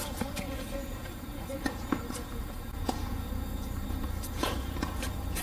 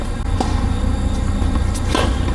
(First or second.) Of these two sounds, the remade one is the first